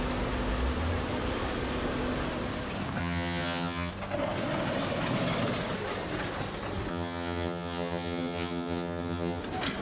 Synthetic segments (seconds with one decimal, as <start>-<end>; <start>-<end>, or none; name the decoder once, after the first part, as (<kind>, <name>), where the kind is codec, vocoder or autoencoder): 3.0-3.9 (vocoder, HiFi-GAN); 6.9-9.4